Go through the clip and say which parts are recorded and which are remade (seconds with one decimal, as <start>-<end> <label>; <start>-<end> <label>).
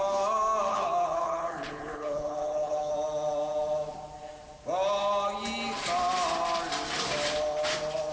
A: 0.0-0.7 recorded; 0.7-2.9 remade; 2.9-8.1 recorded